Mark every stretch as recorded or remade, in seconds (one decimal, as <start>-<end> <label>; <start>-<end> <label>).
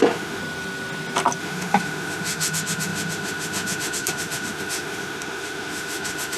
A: 0.0-0.4 remade; 0.4-1.4 recorded; 1.4-6.4 remade